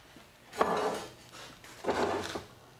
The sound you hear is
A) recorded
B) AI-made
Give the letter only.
A